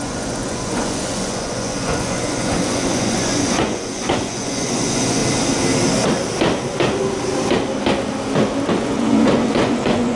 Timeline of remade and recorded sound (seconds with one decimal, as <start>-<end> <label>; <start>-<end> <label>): 0.0-5.2 remade; 5.2-8.7 recorded; 8.7-10.2 remade